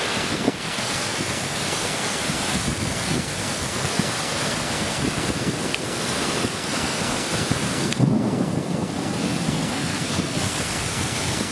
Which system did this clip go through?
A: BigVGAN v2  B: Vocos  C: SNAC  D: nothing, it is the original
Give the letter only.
C